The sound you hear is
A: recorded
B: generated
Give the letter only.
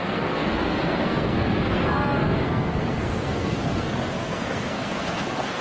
B